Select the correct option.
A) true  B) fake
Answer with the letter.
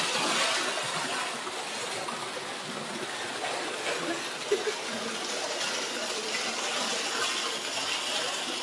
A